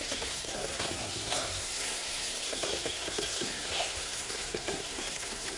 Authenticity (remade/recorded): remade